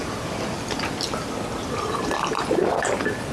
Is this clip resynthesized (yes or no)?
no